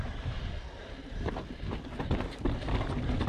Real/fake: real